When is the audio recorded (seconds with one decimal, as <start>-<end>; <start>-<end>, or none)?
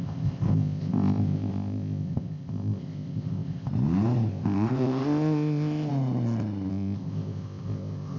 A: 3.7-4.3; 5.9-6.7